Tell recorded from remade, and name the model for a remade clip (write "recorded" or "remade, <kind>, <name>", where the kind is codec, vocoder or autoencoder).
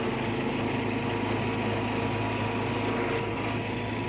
recorded